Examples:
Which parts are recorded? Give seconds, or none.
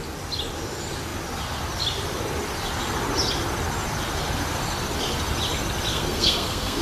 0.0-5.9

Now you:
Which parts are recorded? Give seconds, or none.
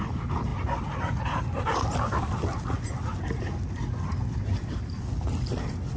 0.0-6.0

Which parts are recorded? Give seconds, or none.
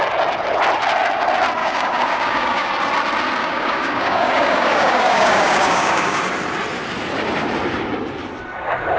0.0-1.6; 2.7-3.4; 6.2-9.0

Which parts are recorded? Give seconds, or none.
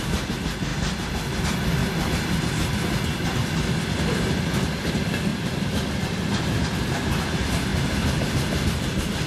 0.0-1.8; 2.4-5.3; 5.9-9.3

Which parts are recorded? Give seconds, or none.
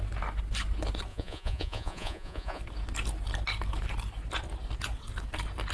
0.0-1.1; 2.6-5.7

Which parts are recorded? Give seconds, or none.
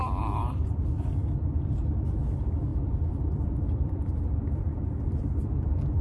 0.6-2.7; 4.1-6.0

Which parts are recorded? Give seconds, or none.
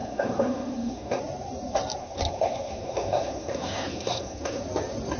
1.2-2.0; 4.6-5.2